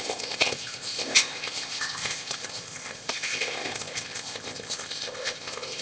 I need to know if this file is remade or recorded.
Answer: remade